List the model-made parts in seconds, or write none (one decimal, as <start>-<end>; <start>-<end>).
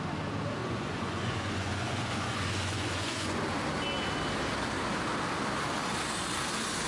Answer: 0.6-3.4